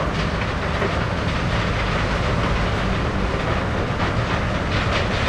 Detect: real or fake real